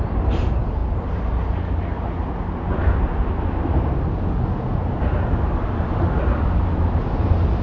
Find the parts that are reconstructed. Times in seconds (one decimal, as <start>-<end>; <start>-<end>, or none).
none